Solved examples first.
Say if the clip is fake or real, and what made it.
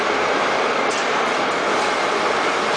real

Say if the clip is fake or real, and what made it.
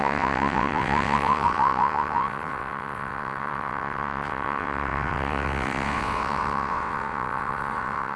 fake, vocoder, WaveNeXt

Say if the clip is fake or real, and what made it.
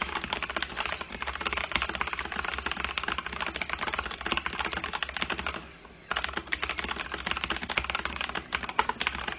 real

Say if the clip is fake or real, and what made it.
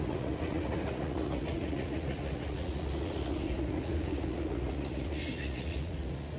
fake, vocoder, Vocos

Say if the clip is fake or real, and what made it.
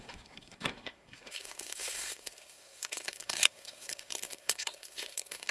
fake, codec, SNAC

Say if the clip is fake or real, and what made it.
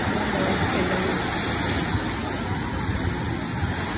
real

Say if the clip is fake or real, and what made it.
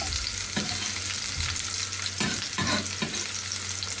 real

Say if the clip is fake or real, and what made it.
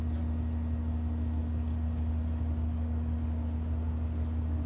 real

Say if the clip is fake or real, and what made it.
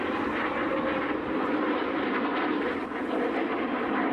real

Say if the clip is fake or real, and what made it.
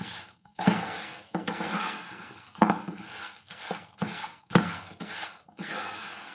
fake, codec, SNAC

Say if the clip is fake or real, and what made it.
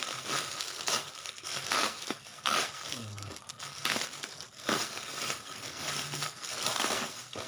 fake, codec, SNAC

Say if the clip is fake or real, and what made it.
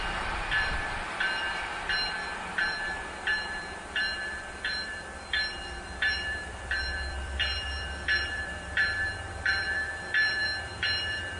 fake, vocoder, BigVGAN v2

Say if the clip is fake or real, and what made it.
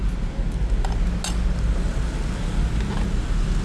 real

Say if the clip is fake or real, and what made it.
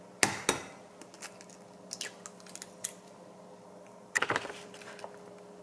real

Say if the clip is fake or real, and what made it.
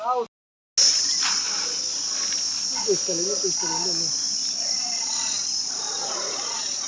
real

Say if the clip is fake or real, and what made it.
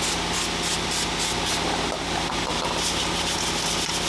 real